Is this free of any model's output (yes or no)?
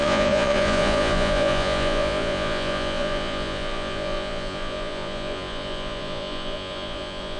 no